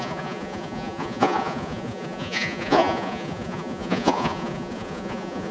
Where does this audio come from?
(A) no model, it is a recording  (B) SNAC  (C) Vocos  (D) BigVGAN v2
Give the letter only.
C